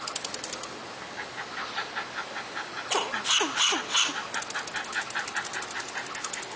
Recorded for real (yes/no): yes